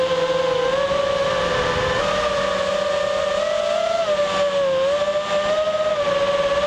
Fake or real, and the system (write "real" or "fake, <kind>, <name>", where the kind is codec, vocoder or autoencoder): real